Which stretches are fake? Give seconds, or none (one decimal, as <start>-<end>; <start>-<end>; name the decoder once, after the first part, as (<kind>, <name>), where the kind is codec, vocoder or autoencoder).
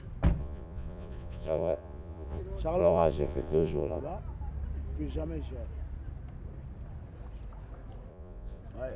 0.4-2.4 (vocoder, Vocos); 2.8-4.0; 8.1-8.6